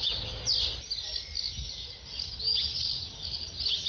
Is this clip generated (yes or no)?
no